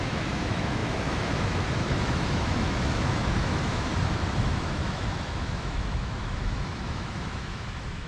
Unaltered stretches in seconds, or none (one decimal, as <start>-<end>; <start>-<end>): 3.9-4.4